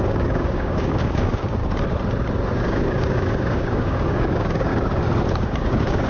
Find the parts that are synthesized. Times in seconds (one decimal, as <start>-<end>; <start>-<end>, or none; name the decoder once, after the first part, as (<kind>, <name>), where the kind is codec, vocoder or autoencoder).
0.0-1.6 (codec, DAC); 2.5-4.7; 5.3-6.1